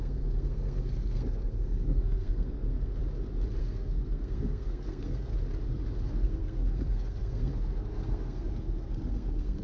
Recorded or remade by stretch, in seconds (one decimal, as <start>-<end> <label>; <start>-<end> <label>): 0.0-3.0 remade; 3.0-3.6 recorded; 3.6-5.3 remade; 5.3-6.1 recorded; 6.1-9.6 remade